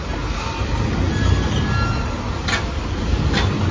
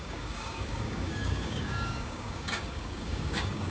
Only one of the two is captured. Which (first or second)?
first